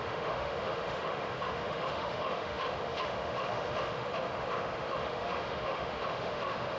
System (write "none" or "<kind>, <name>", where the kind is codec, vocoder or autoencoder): autoencoder, DAC-VAE